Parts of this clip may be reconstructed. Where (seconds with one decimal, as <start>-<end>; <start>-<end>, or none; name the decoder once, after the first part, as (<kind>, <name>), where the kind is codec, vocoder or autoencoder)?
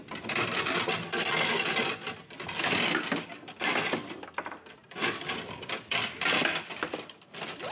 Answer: none